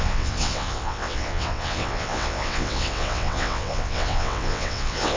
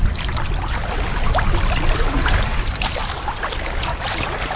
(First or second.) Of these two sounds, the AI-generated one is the first